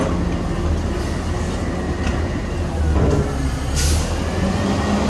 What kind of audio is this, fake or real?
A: real